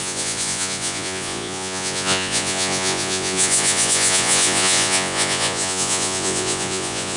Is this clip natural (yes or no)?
no